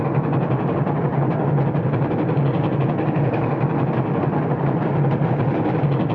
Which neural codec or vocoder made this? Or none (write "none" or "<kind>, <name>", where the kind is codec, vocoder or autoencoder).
none